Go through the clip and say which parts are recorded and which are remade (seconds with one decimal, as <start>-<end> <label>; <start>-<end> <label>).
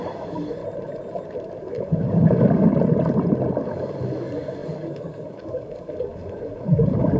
0.0-0.6 remade; 0.6-1.6 recorded; 1.6-2.7 remade; 2.7-3.6 recorded; 3.6-7.2 remade